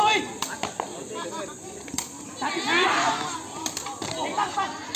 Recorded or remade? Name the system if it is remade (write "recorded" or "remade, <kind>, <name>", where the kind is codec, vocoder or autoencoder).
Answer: recorded